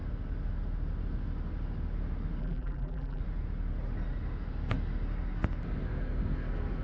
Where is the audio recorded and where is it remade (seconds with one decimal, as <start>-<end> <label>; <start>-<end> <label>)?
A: 0.0-2.4 recorded; 2.4-3.2 remade; 3.2-6.8 recorded